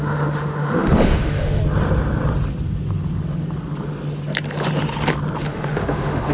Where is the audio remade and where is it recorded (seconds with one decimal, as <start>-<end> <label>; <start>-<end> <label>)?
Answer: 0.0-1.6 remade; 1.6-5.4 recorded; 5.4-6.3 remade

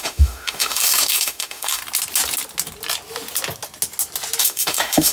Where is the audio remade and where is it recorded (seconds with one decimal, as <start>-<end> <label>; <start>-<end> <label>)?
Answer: 0.0-1.8 remade; 1.8-4.4 recorded; 4.4-5.1 remade

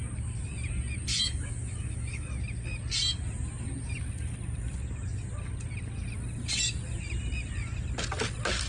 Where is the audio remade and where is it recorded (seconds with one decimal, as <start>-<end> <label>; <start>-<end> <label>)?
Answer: 0.0-1.1 recorded; 1.1-2.3 remade; 2.3-8.7 recorded